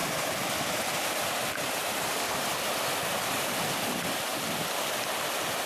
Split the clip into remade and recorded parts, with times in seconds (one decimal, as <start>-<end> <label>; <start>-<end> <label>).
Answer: 0.0-4.3 remade; 4.3-4.9 recorded; 4.9-5.7 remade